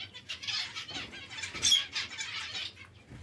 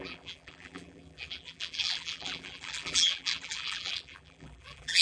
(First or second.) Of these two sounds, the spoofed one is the second